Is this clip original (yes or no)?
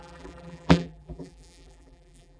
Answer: no